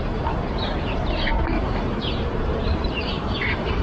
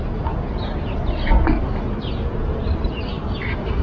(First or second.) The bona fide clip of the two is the second